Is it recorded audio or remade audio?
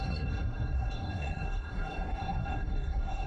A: remade